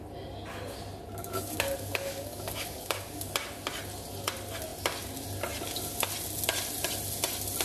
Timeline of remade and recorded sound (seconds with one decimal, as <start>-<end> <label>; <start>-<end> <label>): 0.0-1.2 recorded; 1.2-3.3 remade; 3.3-7.6 recorded